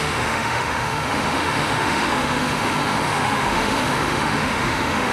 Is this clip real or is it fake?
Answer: fake